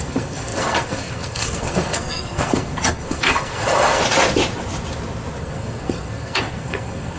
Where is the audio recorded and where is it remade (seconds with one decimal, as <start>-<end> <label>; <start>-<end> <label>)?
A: 0.0-4.0 remade; 4.0-5.4 recorded; 5.4-7.2 remade